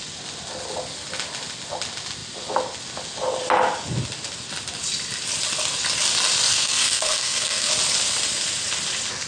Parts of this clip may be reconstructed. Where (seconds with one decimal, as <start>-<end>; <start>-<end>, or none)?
6.5-7.7